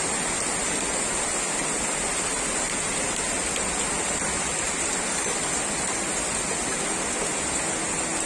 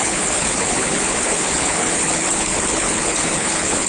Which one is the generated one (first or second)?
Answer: second